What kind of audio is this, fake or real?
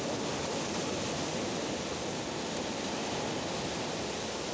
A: real